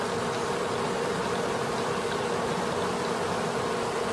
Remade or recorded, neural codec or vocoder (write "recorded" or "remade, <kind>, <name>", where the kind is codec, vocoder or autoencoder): recorded